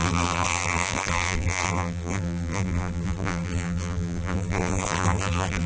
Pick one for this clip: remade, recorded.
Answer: remade